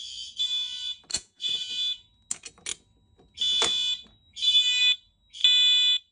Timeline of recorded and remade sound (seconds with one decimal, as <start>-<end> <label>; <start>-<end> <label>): 0.0-1.1 recorded; 1.1-1.7 remade; 1.7-6.1 recorded